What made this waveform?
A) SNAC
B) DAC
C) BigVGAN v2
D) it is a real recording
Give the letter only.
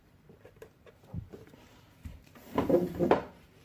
C